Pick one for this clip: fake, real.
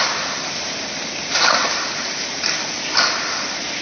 real